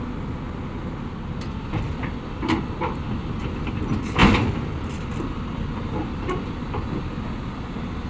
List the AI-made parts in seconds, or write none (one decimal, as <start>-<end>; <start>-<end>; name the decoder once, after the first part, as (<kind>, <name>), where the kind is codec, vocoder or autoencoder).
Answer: 0.0-8.1 (vocoder, BigVGAN v2)